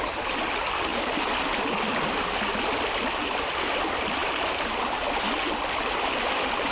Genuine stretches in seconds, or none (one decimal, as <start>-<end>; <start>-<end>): 0.0-6.7